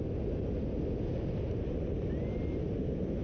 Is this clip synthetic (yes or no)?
no